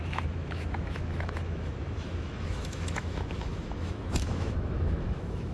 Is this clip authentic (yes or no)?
no